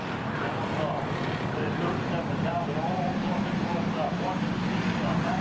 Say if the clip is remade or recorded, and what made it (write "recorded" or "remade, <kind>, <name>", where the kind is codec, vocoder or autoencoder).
recorded